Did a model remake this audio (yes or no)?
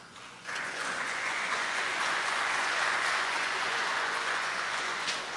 yes